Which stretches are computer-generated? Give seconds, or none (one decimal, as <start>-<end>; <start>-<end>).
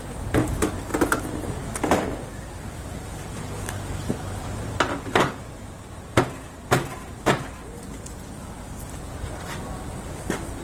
2.3-7.3